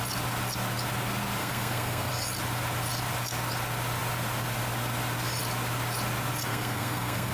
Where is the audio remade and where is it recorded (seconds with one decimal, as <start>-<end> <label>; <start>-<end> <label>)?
0.0-1.4 recorded; 1.4-2.1 remade; 2.1-6.5 recorded; 6.5-7.3 remade